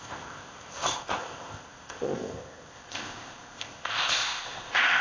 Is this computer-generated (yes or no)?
yes